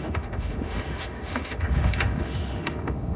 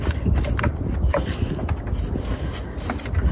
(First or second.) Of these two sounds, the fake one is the first